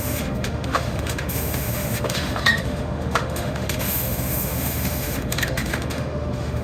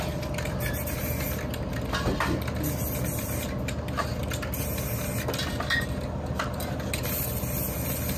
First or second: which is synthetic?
first